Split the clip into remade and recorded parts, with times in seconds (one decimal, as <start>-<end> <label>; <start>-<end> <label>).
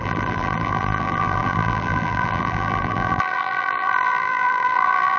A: 0.0-5.2 remade